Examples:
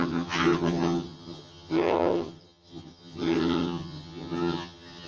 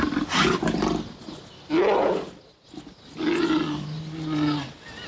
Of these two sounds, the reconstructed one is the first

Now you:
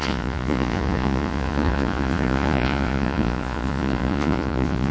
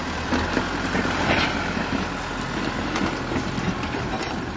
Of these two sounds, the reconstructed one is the first